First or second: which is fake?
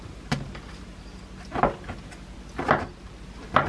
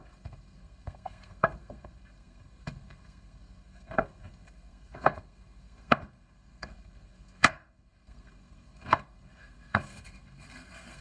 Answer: second